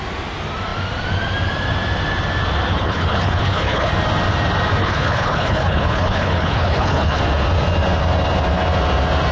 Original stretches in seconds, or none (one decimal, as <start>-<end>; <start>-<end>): 0.0-2.7; 3.9-4.8; 7.2-9.3